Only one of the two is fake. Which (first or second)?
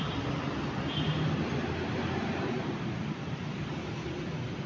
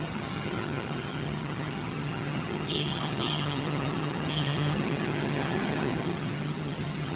second